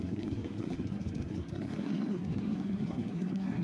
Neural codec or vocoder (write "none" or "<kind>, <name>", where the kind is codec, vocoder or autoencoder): codec, SNAC